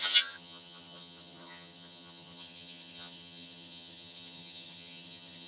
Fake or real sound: fake